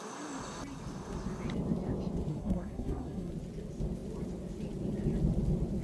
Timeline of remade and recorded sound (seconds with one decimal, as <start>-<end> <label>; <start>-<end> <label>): 0.0-2.3 recorded; 2.3-3.3 remade; 3.3-5.8 recorded